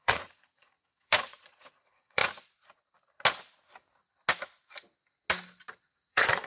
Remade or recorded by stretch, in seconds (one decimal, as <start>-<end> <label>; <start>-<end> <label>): 0.0-2.2 remade; 2.2-6.1 recorded; 6.1-6.5 remade